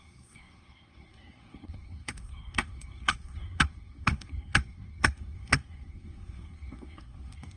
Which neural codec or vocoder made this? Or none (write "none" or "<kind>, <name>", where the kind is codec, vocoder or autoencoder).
codec, SNAC